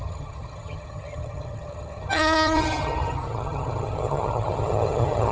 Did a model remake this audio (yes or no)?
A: yes